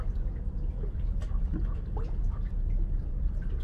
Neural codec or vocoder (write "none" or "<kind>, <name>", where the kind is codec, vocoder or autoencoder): none